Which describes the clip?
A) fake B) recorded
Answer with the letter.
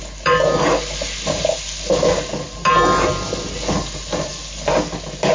B